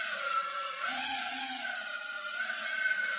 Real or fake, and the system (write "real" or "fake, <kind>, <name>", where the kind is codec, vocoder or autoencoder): fake, vocoder, Vocos